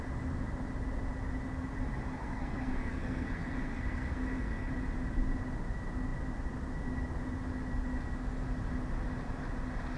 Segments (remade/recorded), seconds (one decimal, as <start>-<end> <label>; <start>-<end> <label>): 0.0-2.1 recorded; 2.1-4.7 remade; 4.7-10.0 recorded